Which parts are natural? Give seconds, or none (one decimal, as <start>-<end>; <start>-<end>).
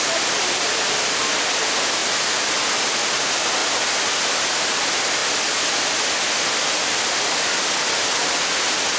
0.0-9.0